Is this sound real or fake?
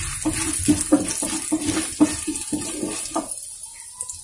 real